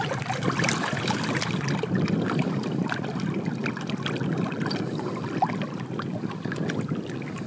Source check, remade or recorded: recorded